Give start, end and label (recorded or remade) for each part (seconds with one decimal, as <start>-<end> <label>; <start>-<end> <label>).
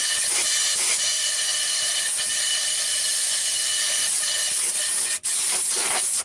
0.0-1.8 remade; 1.8-6.2 recorded